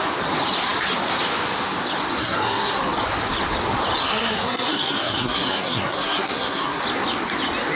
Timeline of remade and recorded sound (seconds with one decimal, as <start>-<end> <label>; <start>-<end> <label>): 0.0-2.2 recorded; 2.2-2.8 remade; 2.8-4.0 recorded; 4.0-6.8 remade; 6.8-7.8 recorded